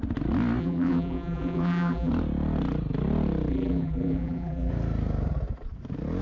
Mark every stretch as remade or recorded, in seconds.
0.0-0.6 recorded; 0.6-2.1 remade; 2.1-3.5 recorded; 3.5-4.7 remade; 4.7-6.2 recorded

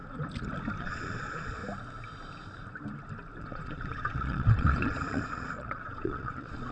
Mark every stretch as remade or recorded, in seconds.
0.0-0.8 recorded; 0.8-1.6 remade; 1.6-3.4 recorded; 3.4-6.7 remade

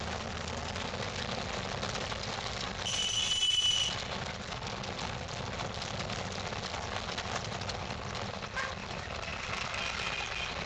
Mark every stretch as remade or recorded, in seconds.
0.0-10.7 recorded

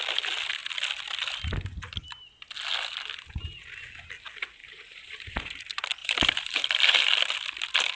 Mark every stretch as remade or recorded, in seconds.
0.0-4.6 recorded; 4.6-5.6 remade; 5.6-6.0 recorded; 6.0-7.0 remade; 7.0-8.0 recorded